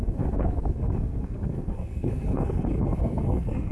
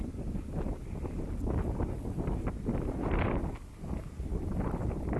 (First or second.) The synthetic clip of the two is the first